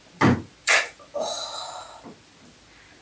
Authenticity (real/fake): real